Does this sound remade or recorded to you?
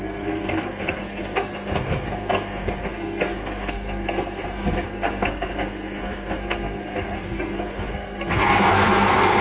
remade